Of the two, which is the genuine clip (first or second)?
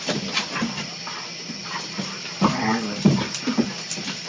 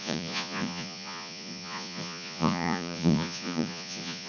first